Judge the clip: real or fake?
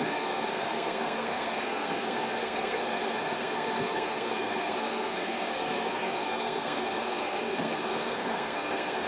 fake